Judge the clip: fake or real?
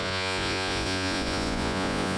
fake